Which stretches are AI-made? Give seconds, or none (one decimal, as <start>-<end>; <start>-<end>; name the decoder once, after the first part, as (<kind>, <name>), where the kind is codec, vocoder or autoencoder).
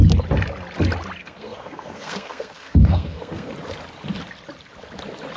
1.2-3.5 (codec, SNAC)